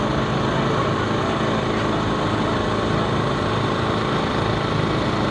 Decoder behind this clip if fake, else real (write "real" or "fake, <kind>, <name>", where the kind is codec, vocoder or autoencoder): real